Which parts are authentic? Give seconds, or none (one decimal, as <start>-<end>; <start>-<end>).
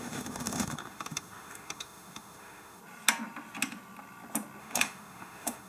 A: 2.8-4.6